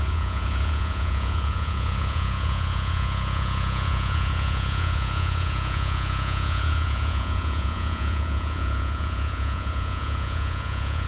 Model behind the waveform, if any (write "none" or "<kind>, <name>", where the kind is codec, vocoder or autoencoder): vocoder, Vocos